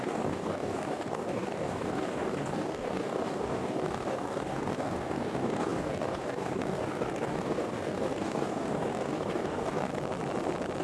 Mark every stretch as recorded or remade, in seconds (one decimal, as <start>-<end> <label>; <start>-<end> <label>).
0.0-9.9 remade; 9.9-10.8 recorded